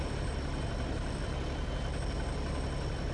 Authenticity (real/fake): real